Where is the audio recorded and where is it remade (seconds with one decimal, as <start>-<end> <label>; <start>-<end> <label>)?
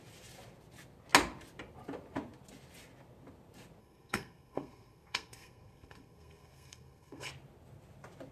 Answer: 0.0-3.8 recorded; 3.8-7.3 remade; 7.3-8.3 recorded